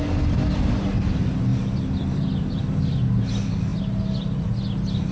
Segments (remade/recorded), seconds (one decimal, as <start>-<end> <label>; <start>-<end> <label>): 0.0-5.1 recorded